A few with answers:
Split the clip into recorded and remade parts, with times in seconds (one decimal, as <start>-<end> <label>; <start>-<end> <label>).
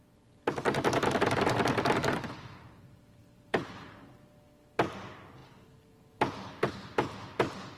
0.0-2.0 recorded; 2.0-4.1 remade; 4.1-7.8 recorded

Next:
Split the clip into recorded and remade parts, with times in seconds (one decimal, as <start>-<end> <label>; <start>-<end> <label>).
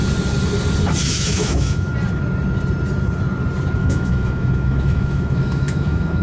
0.0-1.0 recorded; 1.0-1.9 remade; 1.9-3.8 recorded; 3.8-6.2 remade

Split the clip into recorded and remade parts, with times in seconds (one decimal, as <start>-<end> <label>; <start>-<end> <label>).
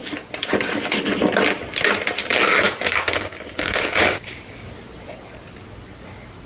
0.0-2.5 recorded; 2.5-4.7 remade; 4.7-6.5 recorded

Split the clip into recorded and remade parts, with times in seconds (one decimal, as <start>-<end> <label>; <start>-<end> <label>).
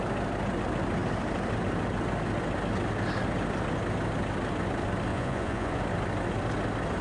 0.0-5.1 recorded; 5.1-5.8 remade; 5.8-7.0 recorded